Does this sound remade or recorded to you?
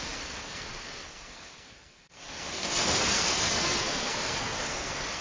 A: remade